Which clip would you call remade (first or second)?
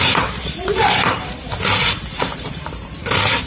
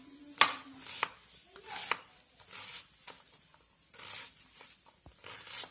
first